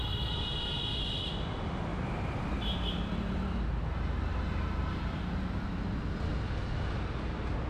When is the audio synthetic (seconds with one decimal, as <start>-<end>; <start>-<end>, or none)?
1.9-5.9